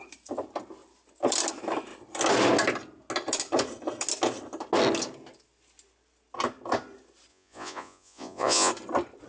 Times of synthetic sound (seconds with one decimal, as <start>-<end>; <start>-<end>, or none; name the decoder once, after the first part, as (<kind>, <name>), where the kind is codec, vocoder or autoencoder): 7.3-8.7 (vocoder, Vocos)